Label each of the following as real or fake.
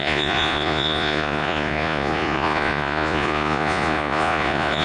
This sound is fake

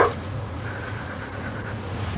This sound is fake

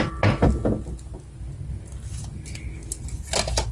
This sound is real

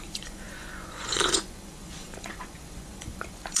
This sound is fake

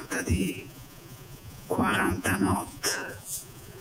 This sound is fake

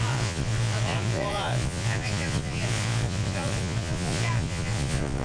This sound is fake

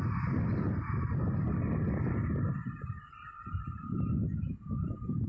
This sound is real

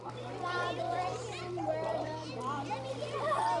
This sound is real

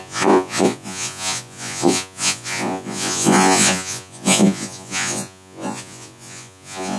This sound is fake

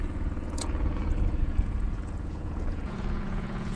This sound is fake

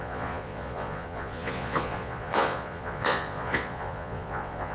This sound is fake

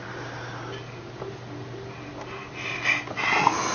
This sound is real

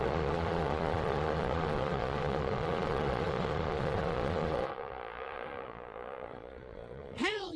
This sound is fake